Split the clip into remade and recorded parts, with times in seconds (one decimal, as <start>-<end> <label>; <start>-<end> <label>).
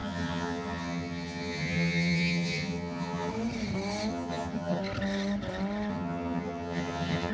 0.0-3.3 remade; 3.3-4.1 recorded; 4.1-4.8 remade; 4.8-5.9 recorded; 5.9-7.3 remade